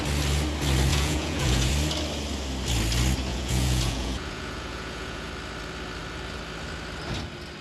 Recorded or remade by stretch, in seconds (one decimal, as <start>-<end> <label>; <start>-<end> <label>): 0.0-0.9 recorded; 0.9-1.7 remade; 1.7-3.3 recorded; 3.3-5.3 remade; 5.3-7.6 recorded